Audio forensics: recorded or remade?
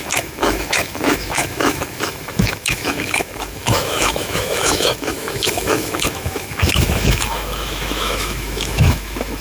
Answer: remade